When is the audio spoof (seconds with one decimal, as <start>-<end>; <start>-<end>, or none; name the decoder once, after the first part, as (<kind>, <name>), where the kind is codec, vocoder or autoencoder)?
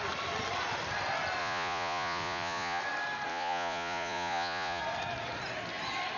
1.4-2.8 (vocoder, Vocos); 3.3-4.8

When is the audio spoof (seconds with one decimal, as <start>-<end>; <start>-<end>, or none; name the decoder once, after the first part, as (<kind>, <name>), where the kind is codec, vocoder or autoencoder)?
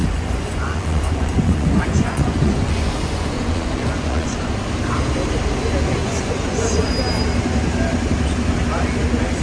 0.0-4.5 (vocoder, Vocos); 6.0-6.9